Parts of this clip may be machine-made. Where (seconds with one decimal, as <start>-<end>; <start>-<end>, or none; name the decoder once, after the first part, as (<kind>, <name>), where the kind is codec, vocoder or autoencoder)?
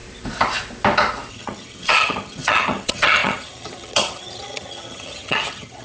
1.3-5.8 (vocoder, HiFi-GAN)